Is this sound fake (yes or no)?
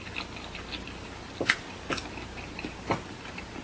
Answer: no